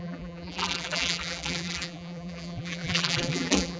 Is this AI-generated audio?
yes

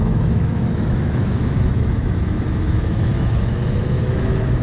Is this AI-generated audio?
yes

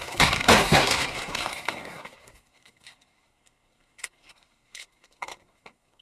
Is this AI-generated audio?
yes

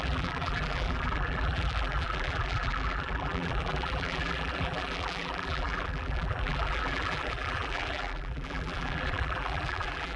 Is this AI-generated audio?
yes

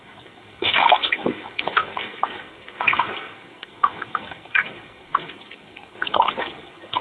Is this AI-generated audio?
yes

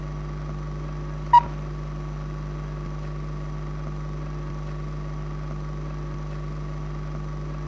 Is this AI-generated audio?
no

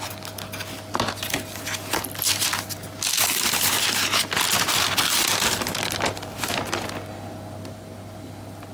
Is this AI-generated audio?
no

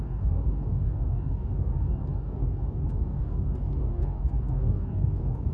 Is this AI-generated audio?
yes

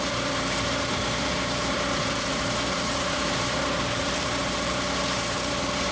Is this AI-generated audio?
yes